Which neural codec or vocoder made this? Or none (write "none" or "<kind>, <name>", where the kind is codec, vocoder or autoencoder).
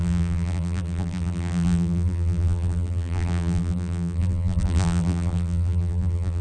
vocoder, BigVGAN v2